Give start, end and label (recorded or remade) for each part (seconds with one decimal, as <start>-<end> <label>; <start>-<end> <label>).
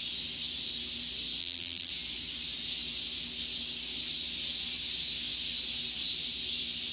0.0-1.4 recorded; 1.4-1.9 remade; 1.9-6.9 recorded